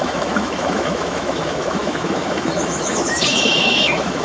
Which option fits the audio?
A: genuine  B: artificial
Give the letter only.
B